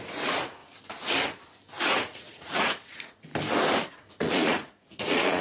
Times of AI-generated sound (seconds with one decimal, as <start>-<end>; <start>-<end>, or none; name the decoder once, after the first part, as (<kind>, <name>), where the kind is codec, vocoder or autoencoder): 0.0-0.6 (vocoder, Vocos); 1.8-3.3; 3.9-5.4